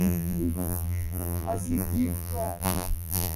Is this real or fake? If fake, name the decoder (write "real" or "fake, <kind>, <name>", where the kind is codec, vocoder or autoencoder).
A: fake, vocoder, BigVGAN v2